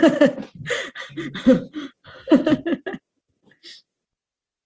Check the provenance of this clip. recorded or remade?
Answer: recorded